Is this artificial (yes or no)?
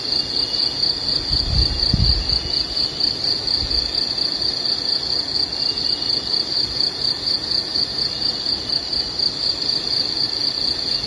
no